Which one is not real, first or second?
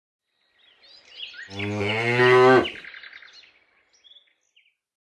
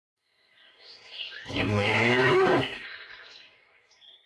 second